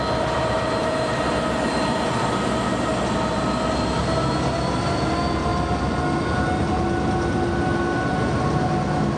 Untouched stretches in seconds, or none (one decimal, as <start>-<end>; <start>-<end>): 0.0-0.4; 1.2-9.2

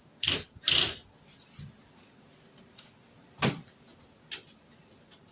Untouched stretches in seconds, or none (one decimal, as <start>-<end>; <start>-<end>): 0.0-5.3

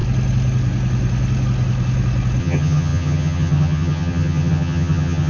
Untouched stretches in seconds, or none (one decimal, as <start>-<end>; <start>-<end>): 0.0-2.4

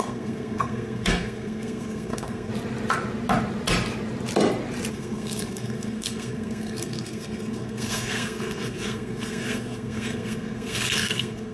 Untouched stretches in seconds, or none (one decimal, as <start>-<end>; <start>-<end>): 2.5-4.9

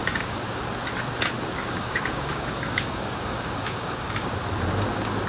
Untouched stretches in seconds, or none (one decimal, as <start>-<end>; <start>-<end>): 0.6-1.6; 4.3-5.3

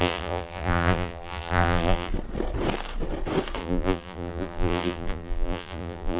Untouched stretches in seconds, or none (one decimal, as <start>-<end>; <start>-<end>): 2.1-3.6

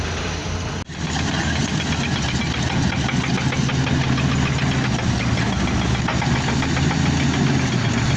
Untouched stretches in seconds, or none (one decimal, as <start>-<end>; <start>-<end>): 0.0-8.2